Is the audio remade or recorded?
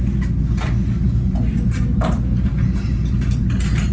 recorded